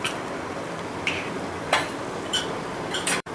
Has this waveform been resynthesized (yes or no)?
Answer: yes